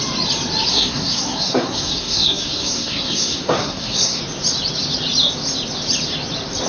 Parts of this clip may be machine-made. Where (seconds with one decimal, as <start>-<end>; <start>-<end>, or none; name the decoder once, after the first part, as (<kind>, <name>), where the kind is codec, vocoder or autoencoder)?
0.7-4.2 (codec, SNAC)